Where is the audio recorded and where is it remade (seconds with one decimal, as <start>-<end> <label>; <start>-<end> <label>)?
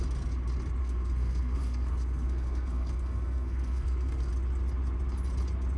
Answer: 0.0-0.8 recorded; 0.8-4.3 remade; 4.3-5.8 recorded